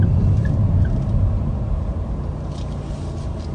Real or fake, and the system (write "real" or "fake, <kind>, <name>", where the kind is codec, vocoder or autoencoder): real